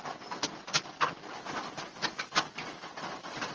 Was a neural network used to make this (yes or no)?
no